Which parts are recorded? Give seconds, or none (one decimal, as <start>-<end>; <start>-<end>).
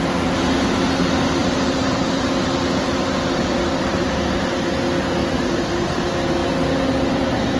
0.0-1.4; 2.1-3.9; 4.5-5.2; 6.0-7.6